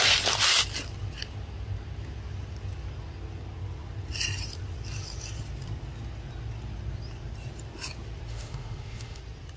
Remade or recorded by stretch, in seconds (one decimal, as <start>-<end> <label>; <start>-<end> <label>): 0.0-8.3 recorded; 8.3-9.2 remade; 9.2-9.6 recorded

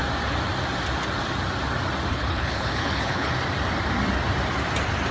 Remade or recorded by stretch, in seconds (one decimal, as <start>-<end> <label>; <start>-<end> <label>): 0.0-2.1 recorded; 2.1-3.3 remade; 3.3-5.1 recorded

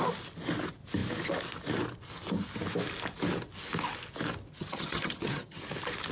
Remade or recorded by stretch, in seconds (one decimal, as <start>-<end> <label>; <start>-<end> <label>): 0.0-4.5 recorded; 4.5-5.6 remade; 5.6-6.1 recorded

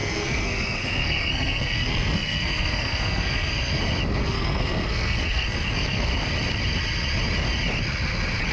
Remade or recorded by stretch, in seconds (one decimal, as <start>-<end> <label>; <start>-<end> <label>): 0.0-3.7 remade; 3.7-4.2 recorded; 4.2-6.1 remade; 6.1-8.5 recorded

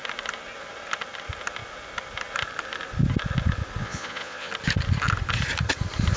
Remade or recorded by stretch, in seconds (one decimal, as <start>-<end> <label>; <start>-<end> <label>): 0.0-3.8 recorded; 3.8-4.5 remade; 4.5-6.2 recorded

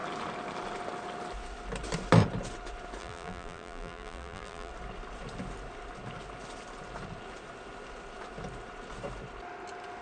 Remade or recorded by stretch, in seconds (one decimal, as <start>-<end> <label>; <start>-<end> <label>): 0.0-3.0 recorded; 3.0-4.7 remade; 4.7-10.0 recorded

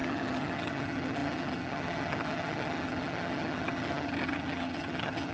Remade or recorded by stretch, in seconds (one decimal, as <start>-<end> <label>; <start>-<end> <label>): 0.0-5.3 remade